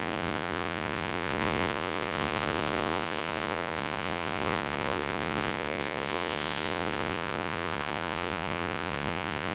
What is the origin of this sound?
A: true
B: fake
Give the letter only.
B